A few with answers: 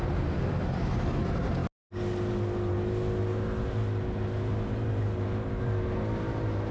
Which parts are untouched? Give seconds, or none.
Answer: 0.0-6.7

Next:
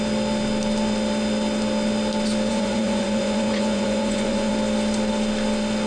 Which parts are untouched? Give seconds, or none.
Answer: 0.0-2.5; 4.5-5.9

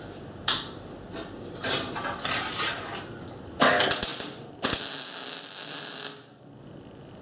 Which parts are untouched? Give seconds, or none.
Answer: 0.0-7.2

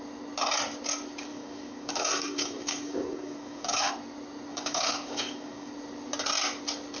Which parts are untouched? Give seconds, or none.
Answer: 0.0-1.3; 3.9-4.5; 5.7-7.0